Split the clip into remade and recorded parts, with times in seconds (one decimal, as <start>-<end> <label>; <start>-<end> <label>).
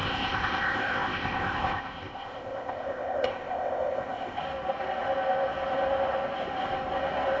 0.0-4.4 remade; 4.4-7.4 recorded